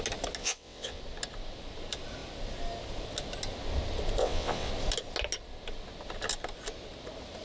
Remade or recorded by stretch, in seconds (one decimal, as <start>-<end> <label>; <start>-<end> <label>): 0.0-0.4 recorded; 0.4-1.0 remade; 1.0-4.2 recorded; 4.2-4.7 remade; 4.7-7.4 recorded